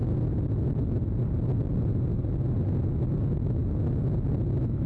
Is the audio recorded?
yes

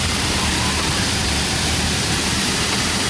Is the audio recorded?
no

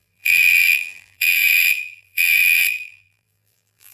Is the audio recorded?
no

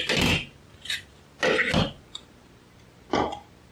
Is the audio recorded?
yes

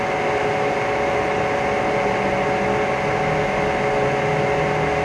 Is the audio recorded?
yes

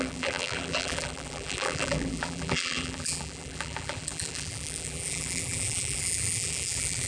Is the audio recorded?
no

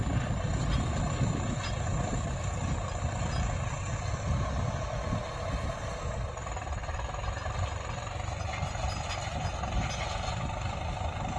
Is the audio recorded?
yes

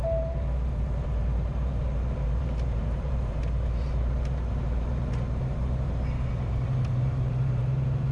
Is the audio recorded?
no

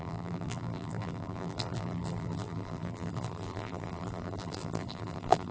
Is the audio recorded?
no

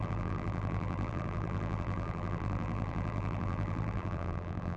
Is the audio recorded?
no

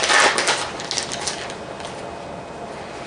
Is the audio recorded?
yes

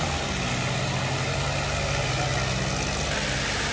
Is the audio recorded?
yes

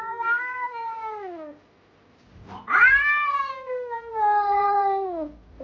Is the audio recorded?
yes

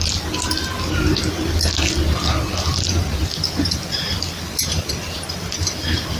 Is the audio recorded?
yes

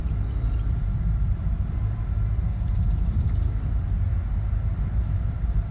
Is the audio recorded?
no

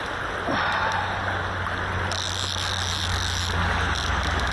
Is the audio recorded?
yes